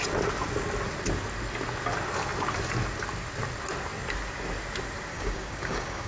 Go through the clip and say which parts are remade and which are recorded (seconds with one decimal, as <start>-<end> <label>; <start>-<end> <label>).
0.0-5.1 recorded; 5.1-6.1 remade